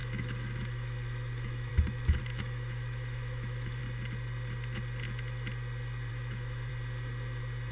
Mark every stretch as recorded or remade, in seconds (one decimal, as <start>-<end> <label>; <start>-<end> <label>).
0.0-1.7 remade; 1.7-2.2 recorded; 2.2-3.8 remade; 3.8-6.1 recorded; 6.1-6.7 remade; 6.7-7.7 recorded